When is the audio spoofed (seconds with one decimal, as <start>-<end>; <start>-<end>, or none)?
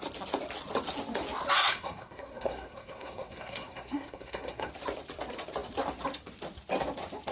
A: 1.6-4.7